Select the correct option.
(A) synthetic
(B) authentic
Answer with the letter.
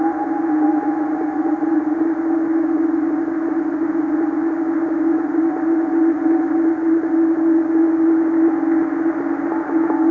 B